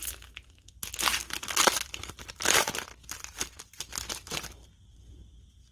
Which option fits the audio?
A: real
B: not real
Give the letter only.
B